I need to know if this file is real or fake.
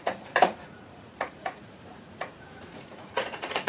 fake